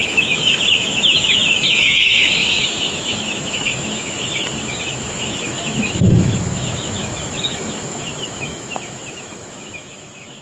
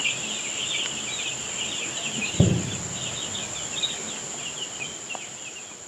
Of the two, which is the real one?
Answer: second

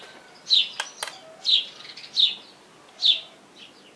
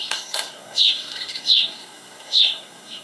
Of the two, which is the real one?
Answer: first